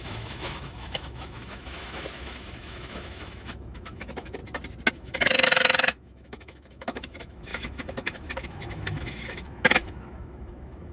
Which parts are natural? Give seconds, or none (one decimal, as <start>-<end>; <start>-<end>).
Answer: 4.4-4.9